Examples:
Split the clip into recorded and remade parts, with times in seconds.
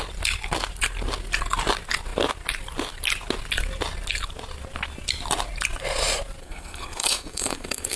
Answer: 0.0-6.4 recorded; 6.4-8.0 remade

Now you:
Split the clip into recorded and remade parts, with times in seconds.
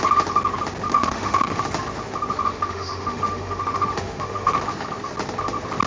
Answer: 0.0-0.9 recorded; 0.9-1.6 remade; 1.6-2.5 recorded; 2.5-4.5 remade; 4.5-5.9 recorded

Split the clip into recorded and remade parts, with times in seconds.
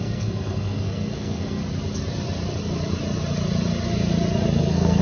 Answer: 0.0-1.6 remade; 1.6-4.6 recorded; 4.6-5.0 remade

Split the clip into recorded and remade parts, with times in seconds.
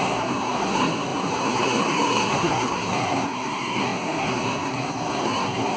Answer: 0.0-5.8 remade